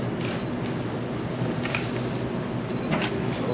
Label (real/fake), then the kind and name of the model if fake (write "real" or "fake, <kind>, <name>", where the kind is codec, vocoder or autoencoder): real